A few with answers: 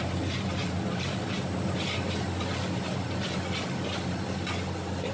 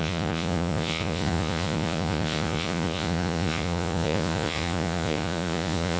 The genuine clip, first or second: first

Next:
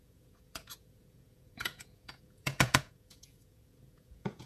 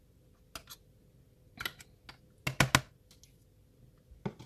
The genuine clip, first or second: second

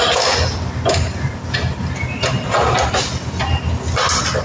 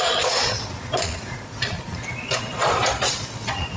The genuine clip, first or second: first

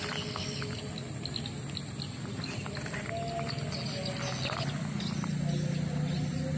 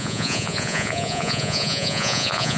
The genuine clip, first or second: first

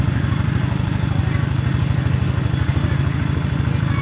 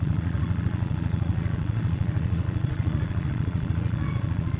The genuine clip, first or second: first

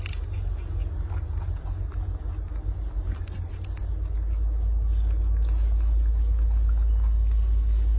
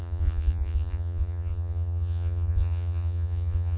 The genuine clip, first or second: first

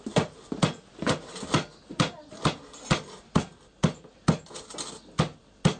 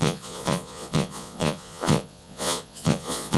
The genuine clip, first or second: first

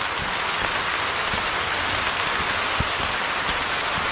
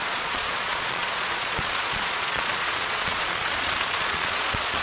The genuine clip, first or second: first